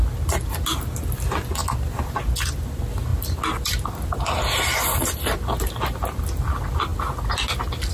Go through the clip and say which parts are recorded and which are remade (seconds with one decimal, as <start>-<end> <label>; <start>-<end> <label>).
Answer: 0.0-7.9 recorded